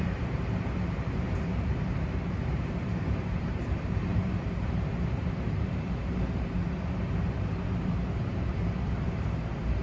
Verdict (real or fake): fake